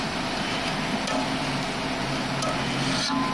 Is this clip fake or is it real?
real